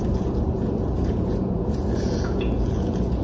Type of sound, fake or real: fake